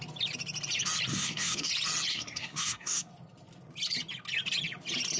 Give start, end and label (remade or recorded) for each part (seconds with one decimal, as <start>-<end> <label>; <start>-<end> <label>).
0.0-1.1 recorded; 1.1-1.7 remade; 1.7-2.1 recorded; 2.1-3.1 remade; 3.1-5.2 recorded